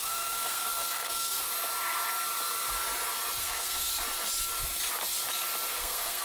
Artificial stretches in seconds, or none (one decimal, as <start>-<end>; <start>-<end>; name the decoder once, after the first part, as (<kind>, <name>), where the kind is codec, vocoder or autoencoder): 0.0-1.5 (codec, SNAC); 3.4-3.9; 5.7-6.2